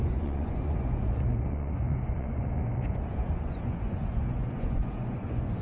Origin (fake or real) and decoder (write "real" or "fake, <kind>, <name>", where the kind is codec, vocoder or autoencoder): fake, vocoder, Vocos